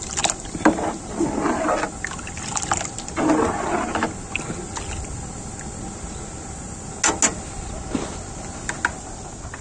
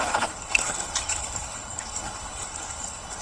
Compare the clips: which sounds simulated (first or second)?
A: second